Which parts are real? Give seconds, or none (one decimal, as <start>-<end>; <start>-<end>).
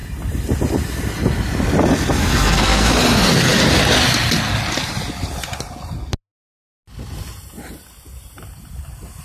0.0-2.2; 2.9-9.2